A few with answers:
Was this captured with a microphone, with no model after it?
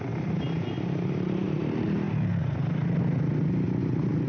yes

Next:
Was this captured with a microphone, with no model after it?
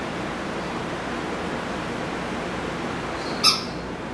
yes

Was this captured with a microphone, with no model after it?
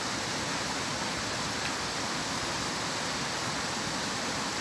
yes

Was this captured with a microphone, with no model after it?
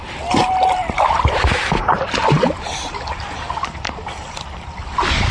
yes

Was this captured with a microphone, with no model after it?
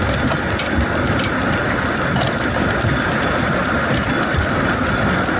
yes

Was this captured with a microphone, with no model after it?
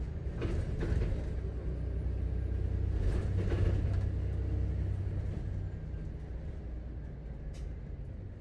yes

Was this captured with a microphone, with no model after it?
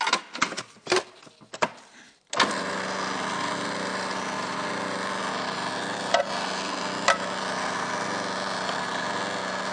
yes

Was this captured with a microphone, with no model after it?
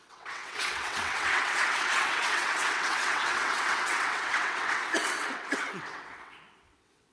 no